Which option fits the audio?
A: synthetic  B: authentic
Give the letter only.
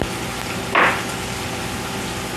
B